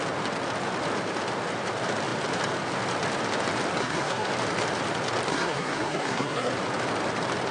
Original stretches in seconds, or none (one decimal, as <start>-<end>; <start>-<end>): 0.0-3.8; 4.3-5.3; 6.5-7.5